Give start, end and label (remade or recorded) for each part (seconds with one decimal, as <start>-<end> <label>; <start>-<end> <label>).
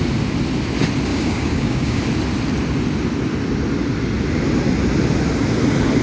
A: 0.0-1.1 recorded; 1.1-2.0 remade; 2.0-6.0 recorded